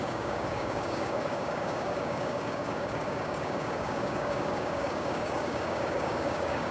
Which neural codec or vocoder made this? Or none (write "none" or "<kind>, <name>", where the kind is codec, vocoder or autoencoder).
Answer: codec, DAC